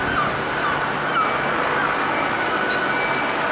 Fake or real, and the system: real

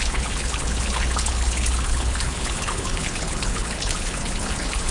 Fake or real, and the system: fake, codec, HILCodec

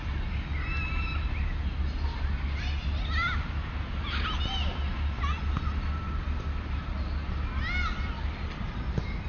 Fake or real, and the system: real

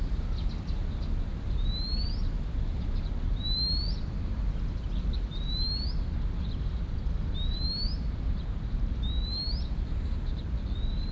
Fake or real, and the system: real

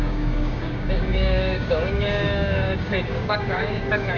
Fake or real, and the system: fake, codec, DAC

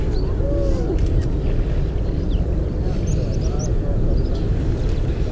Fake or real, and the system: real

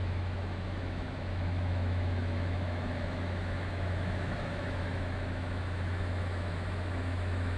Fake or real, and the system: fake, autoencoder, DAC-VAE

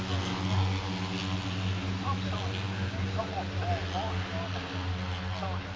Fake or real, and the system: real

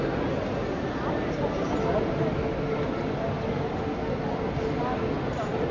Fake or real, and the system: real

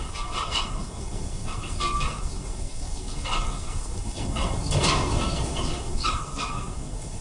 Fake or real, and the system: fake, codec, SNAC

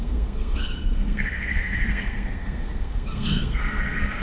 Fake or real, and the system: fake, codec, SNAC